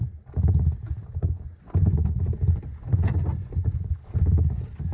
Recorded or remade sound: recorded